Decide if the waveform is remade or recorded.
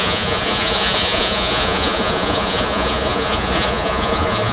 remade